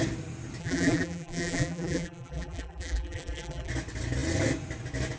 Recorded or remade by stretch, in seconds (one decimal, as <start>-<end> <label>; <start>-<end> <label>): 0.0-0.6 recorded; 0.6-3.7 remade; 3.7-5.2 recorded